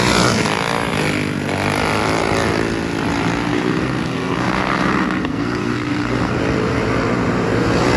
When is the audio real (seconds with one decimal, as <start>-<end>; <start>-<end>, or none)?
0.0-3.5; 6.4-8.0